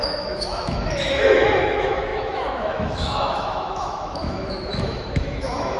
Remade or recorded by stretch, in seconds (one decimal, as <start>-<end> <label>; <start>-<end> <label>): 0.0-5.8 remade

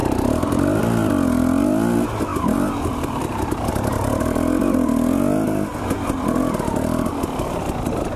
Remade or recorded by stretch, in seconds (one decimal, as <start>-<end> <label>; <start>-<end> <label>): 0.0-2.3 recorded; 2.3-3.7 remade; 3.7-8.2 recorded

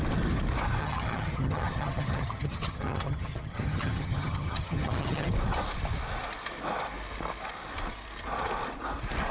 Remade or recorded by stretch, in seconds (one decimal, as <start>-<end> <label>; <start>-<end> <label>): 0.0-0.8 recorded; 0.8-5.3 remade; 5.3-9.3 recorded

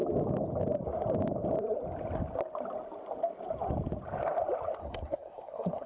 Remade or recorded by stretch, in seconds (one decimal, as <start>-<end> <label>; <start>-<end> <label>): 0.0-4.8 recorded; 4.8-5.9 remade

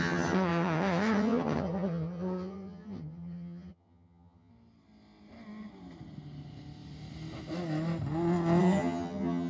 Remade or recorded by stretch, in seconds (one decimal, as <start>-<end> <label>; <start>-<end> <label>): 0.0-4.5 remade; 4.5-8.6 recorded; 8.6-9.5 remade

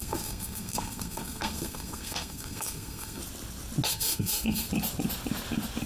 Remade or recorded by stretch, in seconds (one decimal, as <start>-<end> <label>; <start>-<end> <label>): 0.0-3.2 remade; 3.2-3.9 recorded; 3.9-4.7 remade; 4.7-5.9 recorded